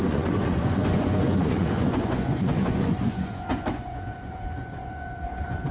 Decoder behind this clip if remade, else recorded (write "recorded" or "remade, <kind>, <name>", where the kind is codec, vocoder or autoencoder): remade, vocoder, Vocos